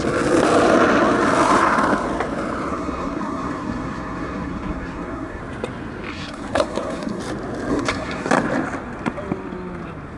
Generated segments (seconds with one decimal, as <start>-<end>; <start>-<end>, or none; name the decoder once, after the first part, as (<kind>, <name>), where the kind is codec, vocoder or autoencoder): 2.7-5.4 (codec, SNAC); 6.1-7.2; 7.7-8.3